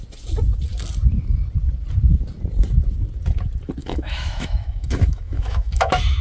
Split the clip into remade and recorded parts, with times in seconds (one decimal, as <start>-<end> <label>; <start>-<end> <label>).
0.0-3.8 recorded; 3.8-6.2 remade